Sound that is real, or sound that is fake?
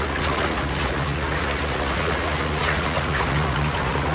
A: fake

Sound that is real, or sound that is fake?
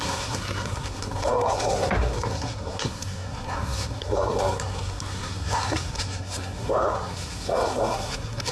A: fake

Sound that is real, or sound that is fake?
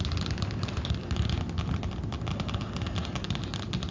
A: real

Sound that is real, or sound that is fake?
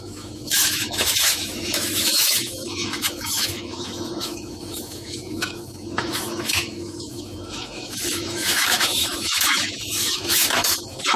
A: fake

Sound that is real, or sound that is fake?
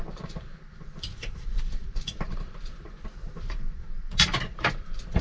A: fake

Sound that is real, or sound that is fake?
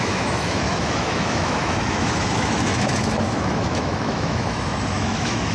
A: fake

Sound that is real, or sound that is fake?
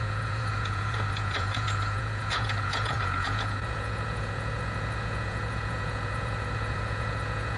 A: fake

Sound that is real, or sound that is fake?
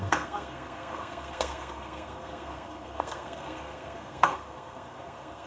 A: fake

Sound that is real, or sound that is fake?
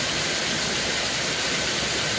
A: fake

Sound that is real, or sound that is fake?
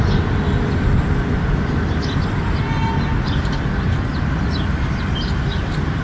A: real